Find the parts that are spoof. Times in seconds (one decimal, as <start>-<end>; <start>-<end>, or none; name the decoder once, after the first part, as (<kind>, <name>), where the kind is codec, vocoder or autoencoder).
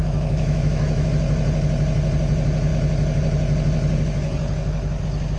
0.0-1.1 (autoencoder, DAC-VAE)